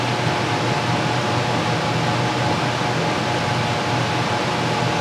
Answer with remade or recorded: recorded